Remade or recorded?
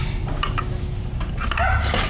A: recorded